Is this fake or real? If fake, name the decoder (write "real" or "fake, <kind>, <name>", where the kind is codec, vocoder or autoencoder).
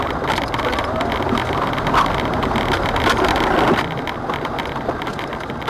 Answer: real